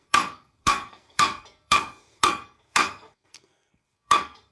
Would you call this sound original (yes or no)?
no